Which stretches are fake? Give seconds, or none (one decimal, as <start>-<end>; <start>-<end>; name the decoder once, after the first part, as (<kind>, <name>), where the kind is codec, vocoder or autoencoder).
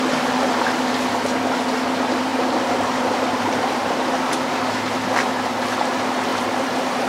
2.3-3.8 (vocoder, BigVGAN v2); 6.3-7.1